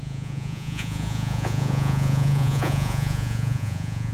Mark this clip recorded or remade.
remade